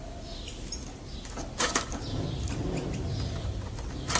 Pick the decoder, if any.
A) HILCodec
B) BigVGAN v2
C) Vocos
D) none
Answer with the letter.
D